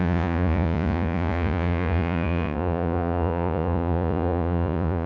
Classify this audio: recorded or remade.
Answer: remade